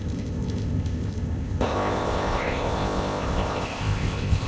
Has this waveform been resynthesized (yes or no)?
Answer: yes